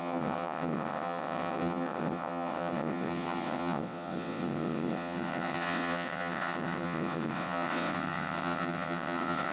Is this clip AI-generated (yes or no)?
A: yes